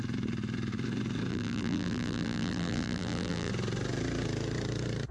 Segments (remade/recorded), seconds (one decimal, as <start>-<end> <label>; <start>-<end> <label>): 0.0-1.3 recorded; 1.3-3.5 remade; 3.5-5.1 recorded

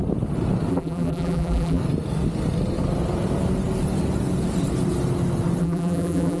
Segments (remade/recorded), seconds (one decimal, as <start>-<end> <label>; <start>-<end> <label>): 0.0-0.7 recorded; 0.7-1.8 remade; 1.8-5.6 recorded; 5.6-6.4 remade

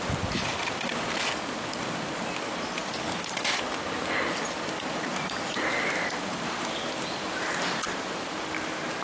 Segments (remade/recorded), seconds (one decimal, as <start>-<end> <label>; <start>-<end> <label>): 0.0-9.0 recorded

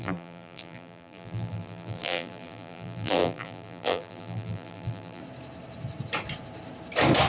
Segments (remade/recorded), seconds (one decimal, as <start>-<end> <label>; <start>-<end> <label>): 0.0-5.2 remade; 5.2-7.3 recorded

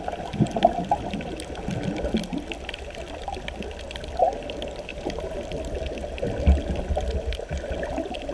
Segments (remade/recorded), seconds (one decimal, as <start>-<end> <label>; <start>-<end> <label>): 0.0-4.9 recorded; 4.9-5.6 remade; 5.6-8.3 recorded

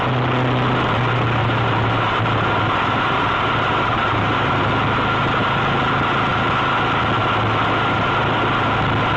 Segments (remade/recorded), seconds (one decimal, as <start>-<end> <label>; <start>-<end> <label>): 0.0-1.4 recorded; 1.4-4.5 remade; 4.5-9.2 recorded

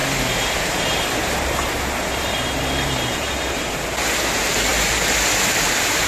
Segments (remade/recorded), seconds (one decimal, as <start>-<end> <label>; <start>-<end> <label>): 0.0-3.7 remade; 3.7-4.7 recorded; 4.7-6.1 remade

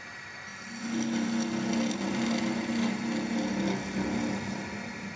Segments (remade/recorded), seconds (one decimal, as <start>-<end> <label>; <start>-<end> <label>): 0.0-5.2 recorded